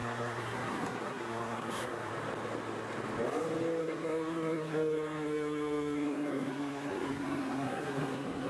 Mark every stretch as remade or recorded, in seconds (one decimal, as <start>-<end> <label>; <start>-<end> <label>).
0.0-2.1 remade; 2.1-3.8 recorded; 3.8-8.5 remade

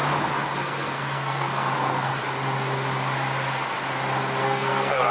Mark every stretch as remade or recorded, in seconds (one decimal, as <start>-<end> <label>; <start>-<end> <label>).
0.0-0.6 recorded; 0.6-2.1 remade; 2.1-4.4 recorded; 4.4-5.1 remade

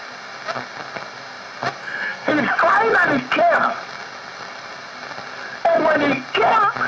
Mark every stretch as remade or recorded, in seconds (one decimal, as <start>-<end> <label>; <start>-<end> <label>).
0.0-1.8 recorded; 1.8-2.3 remade; 2.3-6.9 recorded